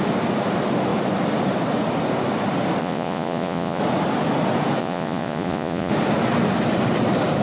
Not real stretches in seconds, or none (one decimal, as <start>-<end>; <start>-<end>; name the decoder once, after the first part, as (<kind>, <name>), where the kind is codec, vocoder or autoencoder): 2.8-3.8 (vocoder, Vocos); 4.8-5.9